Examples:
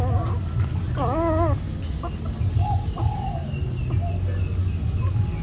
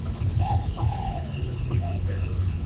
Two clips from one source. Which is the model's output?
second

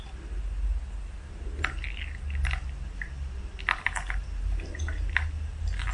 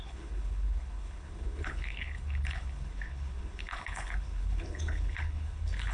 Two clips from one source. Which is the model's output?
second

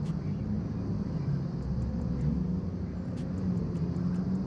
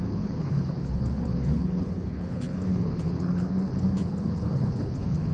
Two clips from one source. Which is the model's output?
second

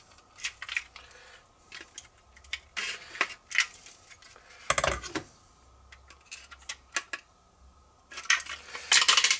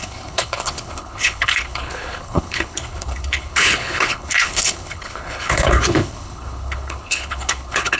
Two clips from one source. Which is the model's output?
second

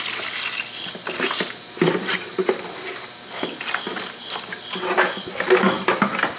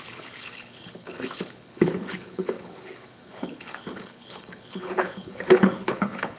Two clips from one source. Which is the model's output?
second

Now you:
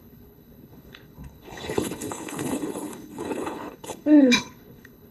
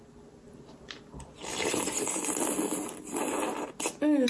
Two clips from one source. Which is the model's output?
first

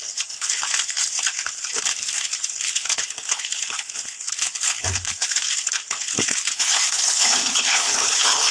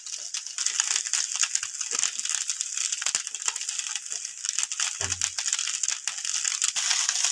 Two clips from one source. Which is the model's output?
first